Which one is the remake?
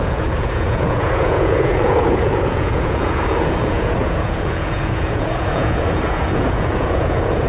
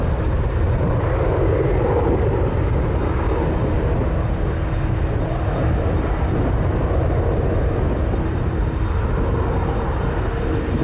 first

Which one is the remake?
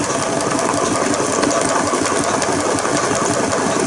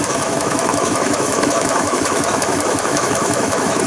second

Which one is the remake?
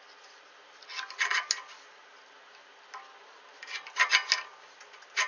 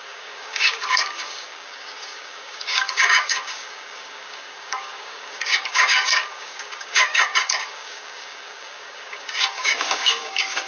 second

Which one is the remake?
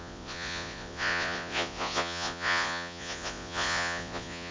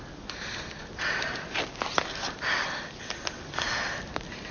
first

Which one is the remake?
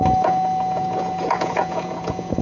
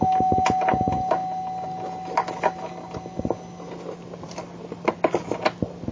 first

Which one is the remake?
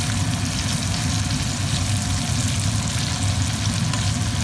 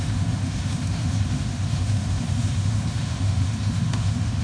second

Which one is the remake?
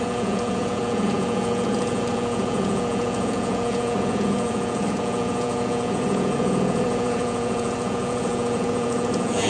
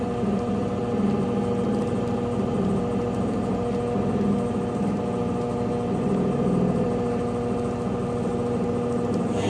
first